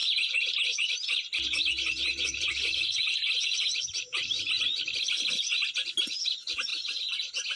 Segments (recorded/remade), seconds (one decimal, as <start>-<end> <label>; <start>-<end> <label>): 0.0-4.6 remade; 4.6-6.7 recorded; 6.7-7.6 remade